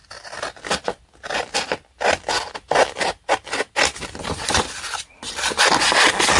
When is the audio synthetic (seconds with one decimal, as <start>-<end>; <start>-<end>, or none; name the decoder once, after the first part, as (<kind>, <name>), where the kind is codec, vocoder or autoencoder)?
none